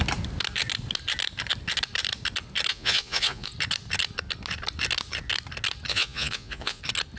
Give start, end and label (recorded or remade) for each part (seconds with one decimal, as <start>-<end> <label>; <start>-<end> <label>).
0.0-2.7 recorded; 2.7-3.5 remade; 3.5-5.9 recorded; 5.9-6.8 remade; 6.8-7.2 recorded